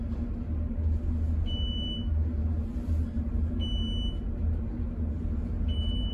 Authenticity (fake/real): real